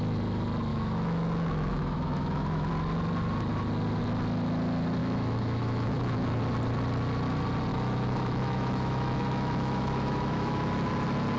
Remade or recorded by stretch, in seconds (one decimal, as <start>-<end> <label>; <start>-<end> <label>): 0.0-0.7 recorded; 0.7-2.7 remade; 2.7-5.0 recorded; 5.0-6.4 remade; 6.4-7.7 recorded; 7.7-10.9 remade; 10.9-11.4 recorded